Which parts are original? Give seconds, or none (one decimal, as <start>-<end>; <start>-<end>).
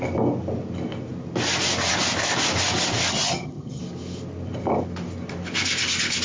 0.0-3.1; 3.8-6.2